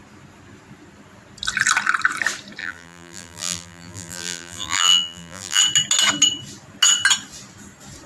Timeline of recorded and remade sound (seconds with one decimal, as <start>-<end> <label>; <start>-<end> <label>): 0.0-2.6 recorded; 2.6-5.6 remade; 5.6-8.1 recorded

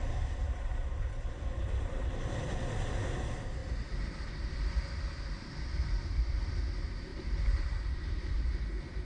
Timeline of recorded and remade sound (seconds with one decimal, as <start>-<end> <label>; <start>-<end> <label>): 0.0-7.1 recorded; 7.1-8.4 remade; 8.4-9.0 recorded

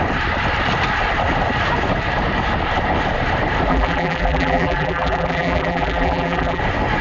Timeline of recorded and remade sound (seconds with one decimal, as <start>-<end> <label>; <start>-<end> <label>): 0.0-3.7 recorded; 3.7-6.6 remade; 6.6-7.0 recorded

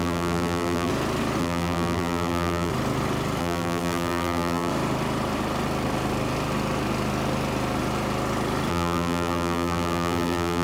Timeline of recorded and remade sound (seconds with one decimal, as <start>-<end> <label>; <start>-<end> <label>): 0.0-0.9 remade; 0.9-1.4 recorded; 1.4-2.7 remade; 2.7-3.4 recorded; 3.4-4.7 remade; 4.7-8.7 recorded; 8.7-10.6 remade